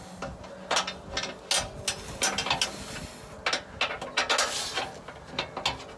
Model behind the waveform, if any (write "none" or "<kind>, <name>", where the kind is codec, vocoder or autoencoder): none